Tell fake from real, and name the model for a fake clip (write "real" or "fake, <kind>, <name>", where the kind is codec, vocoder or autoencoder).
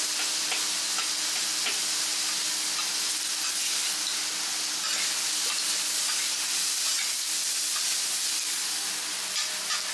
real